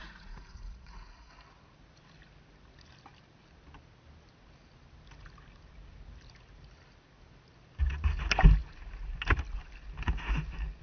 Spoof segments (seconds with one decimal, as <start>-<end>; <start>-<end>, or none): 0.0-1.3